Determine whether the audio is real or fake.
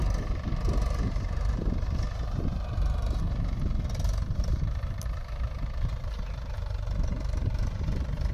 fake